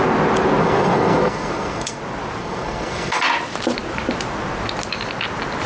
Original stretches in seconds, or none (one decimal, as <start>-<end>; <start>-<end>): 0.0-0.6; 2.0-2.4; 3.2-5.7